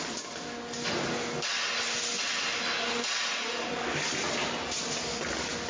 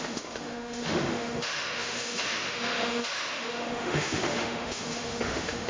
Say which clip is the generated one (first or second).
second